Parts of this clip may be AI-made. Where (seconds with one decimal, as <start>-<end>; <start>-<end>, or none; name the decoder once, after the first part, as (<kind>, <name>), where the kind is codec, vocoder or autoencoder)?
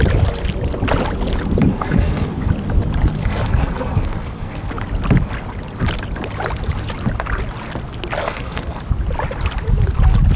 1.7-2.5 (codec, SNAC); 3.2-4.7; 8.2-8.8